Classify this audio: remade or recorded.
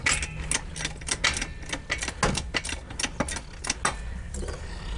recorded